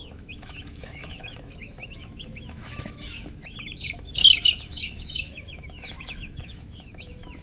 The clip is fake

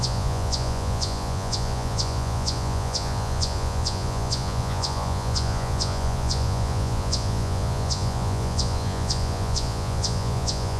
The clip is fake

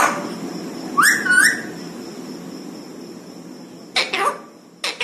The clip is real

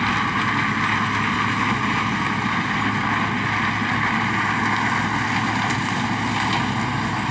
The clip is real